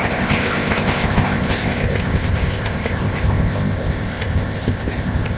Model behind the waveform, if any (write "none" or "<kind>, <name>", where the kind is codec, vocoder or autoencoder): codec, ZipCodec